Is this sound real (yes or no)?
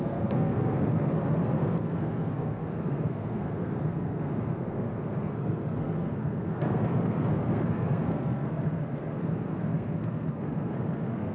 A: no